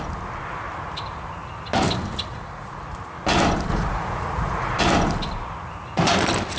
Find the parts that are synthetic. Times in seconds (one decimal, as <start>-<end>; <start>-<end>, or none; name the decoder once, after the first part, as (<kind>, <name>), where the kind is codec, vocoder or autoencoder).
2.3-2.8 (vocoder, Vocos); 3.7-4.8